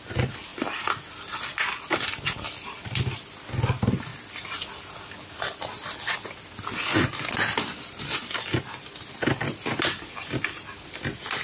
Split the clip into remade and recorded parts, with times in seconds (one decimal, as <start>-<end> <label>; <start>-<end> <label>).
0.0-11.4 recorded